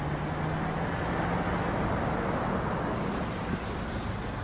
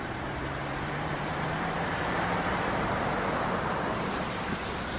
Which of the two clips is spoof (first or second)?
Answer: second